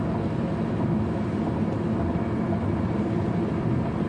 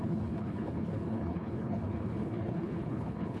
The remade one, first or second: second